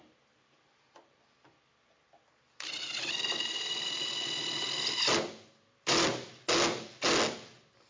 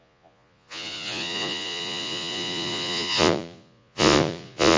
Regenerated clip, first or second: second